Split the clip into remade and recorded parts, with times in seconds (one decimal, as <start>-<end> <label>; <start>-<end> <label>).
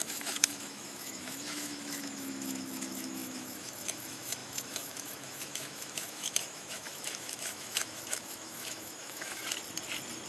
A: 0.0-9.4 remade; 9.4-10.3 recorded